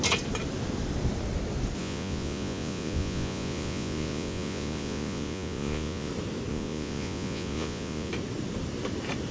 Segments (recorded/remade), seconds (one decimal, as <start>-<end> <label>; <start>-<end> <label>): 0.0-1.8 recorded; 1.8-6.1 remade; 6.1-6.5 recorded; 6.5-8.1 remade; 8.1-9.3 recorded